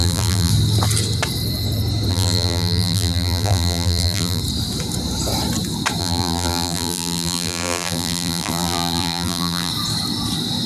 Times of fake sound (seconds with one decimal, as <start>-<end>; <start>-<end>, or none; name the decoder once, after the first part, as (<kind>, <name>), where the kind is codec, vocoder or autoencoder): 0.0-0.5 (vocoder, BigVGAN v2); 2.1-4.4; 6.0-9.7